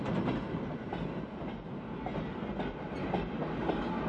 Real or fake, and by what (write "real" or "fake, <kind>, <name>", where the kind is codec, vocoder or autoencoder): real